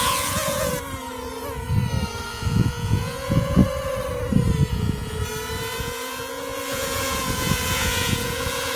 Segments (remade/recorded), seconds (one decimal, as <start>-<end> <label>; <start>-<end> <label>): 0.0-0.7 remade; 0.7-2.3 recorded; 2.3-3.6 remade; 3.6-4.7 recorded; 4.7-5.2 remade; 5.2-5.8 recorded; 5.8-8.8 remade